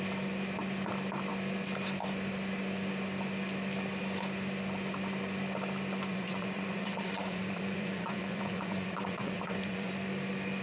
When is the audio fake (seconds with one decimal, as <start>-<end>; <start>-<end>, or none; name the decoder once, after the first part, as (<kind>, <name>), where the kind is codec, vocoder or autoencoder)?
6.1-9.9 (vocoder, Vocos)